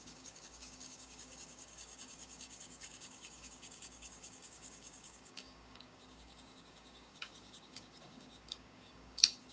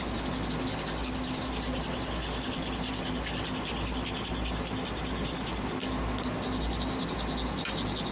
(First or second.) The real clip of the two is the second